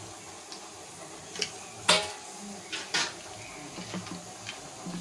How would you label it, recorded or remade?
recorded